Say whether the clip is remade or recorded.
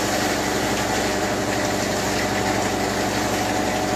recorded